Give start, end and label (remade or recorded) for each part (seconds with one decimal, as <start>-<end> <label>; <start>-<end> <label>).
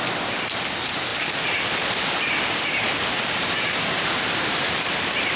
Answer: 0.0-5.4 recorded